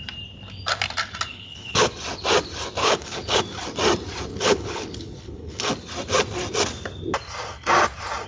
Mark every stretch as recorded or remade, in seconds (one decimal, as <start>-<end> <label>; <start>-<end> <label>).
0.0-1.3 recorded; 1.3-1.9 remade; 1.9-2.8 recorded; 2.8-3.4 remade; 3.4-4.3 recorded; 4.3-5.7 remade; 5.7-8.3 recorded